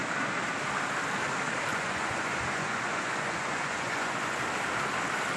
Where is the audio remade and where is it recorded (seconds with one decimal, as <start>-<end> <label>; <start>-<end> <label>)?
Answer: 0.0-1.7 recorded; 1.7-4.4 remade; 4.4-5.4 recorded